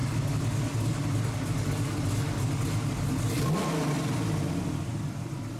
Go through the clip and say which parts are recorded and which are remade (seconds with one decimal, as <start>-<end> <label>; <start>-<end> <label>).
0.0-5.6 recorded